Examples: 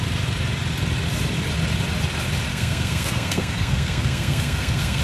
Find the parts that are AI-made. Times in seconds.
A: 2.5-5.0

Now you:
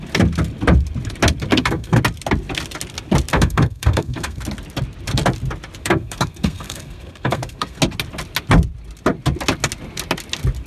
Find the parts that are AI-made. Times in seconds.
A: 1.5-2.0; 3.3-4.4; 5.8-7.8

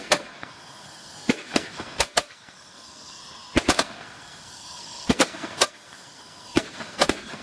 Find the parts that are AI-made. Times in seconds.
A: 0.0-3.2; 3.7-7.4

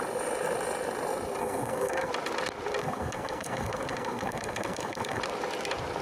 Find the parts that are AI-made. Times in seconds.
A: 1.4-2.1; 2.8-5.2

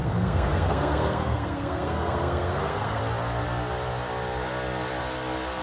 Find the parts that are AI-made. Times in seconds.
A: 0.0-3.0

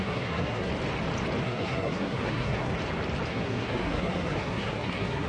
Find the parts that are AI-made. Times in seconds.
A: 0.0-0.7; 1.4-2.7; 3.3-5.3